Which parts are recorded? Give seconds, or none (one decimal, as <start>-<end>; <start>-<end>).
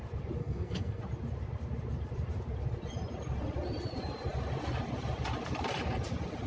0.0-0.4; 1.0-6.5